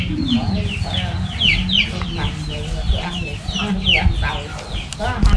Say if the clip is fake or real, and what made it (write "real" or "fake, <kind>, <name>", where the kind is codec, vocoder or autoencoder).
real